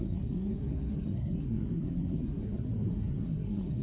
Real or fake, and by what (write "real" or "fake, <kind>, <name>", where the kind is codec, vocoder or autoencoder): fake, codec, SNAC